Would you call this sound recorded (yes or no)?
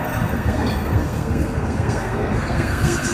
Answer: no